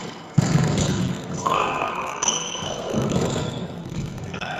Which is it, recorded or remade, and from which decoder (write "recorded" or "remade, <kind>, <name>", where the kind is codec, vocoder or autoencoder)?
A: remade, codec, SNAC